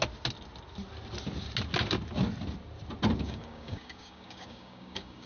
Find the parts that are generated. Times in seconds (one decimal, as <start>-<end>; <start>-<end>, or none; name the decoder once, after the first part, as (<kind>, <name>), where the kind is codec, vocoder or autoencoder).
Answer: 3.2-5.3 (codec, DAC)